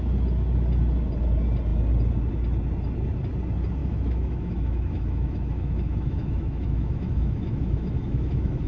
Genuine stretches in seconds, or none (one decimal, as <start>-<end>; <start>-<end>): 0.0-3.8